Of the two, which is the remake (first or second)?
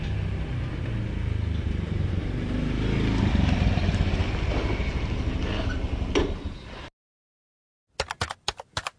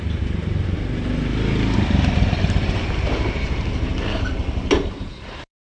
second